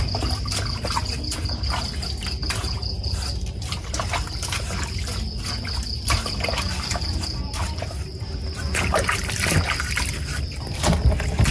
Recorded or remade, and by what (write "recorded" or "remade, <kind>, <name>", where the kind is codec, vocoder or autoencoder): recorded